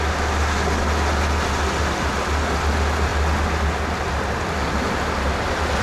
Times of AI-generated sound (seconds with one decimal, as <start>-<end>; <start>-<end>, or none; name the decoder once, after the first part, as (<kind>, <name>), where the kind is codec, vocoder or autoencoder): none